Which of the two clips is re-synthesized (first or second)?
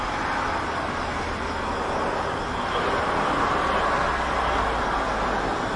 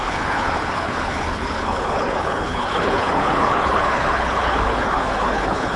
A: second